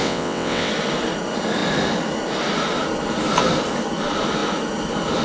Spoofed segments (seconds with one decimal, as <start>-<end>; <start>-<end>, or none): 0.0-0.7

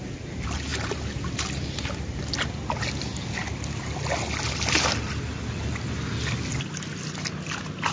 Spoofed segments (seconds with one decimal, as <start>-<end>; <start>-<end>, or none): none

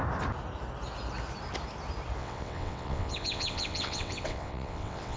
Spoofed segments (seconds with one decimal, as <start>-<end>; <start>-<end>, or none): 2.2-5.2

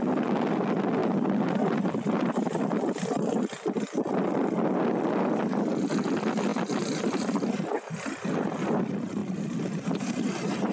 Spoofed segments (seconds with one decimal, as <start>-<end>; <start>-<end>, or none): none

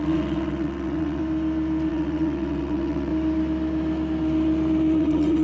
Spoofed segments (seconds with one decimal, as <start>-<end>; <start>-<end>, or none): 0.0-1.2; 1.9-3.1; 5.0-5.4

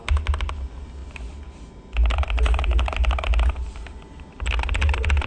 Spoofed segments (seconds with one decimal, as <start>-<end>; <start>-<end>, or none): none